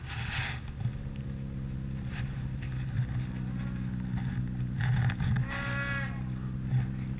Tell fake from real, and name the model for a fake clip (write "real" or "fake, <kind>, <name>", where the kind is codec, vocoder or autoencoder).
real